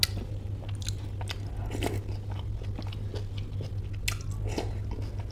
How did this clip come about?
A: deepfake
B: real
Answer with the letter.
B